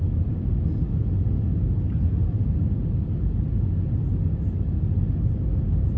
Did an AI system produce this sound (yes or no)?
no